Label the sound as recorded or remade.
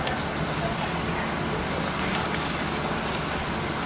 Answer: recorded